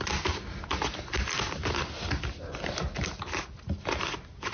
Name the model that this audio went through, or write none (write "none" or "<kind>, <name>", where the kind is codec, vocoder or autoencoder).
none